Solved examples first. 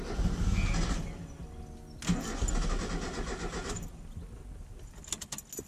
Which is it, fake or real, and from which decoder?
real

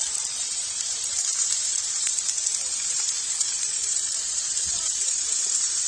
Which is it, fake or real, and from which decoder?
fake, vocoder, BigVGAN v2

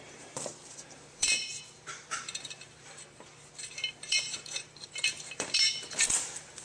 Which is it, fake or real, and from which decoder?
fake, vocoder, BigVGAN v2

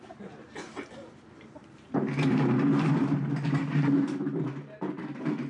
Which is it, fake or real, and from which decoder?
fake, vocoder, BigVGAN v2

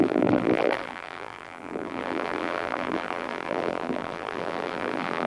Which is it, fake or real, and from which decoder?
fake, vocoder, BigVGAN v2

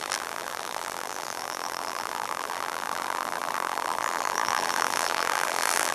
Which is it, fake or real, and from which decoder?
fake, vocoder, BigVGAN v2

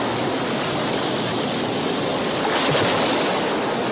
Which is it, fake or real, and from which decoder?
real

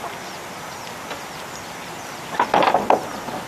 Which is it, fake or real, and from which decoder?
real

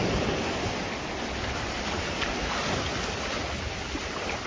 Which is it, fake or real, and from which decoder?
fake, vocoder, BigVGAN v2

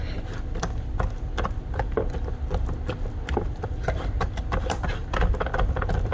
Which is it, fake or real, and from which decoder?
real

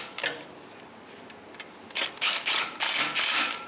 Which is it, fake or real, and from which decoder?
real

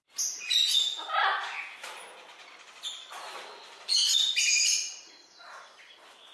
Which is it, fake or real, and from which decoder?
real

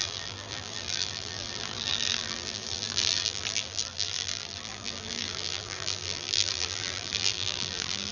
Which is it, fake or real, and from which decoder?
fake, vocoder, BigVGAN v2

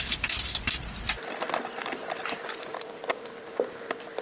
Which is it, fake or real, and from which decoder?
real